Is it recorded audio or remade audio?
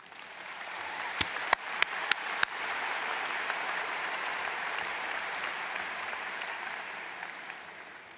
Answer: remade